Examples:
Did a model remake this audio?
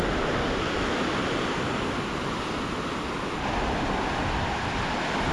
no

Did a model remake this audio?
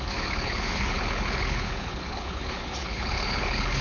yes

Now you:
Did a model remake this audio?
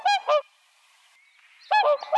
no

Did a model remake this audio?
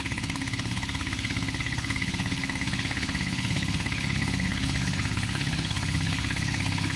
yes